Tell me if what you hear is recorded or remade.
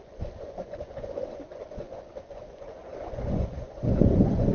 remade